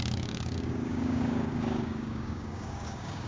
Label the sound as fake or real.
fake